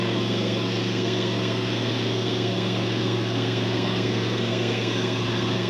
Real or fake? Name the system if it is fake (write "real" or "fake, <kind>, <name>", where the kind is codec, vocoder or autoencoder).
fake, codec, SNAC